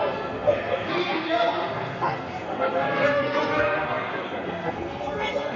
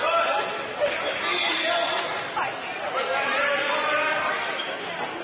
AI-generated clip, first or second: first